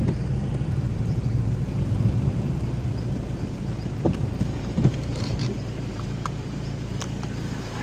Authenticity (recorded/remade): remade